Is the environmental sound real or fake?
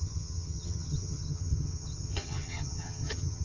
fake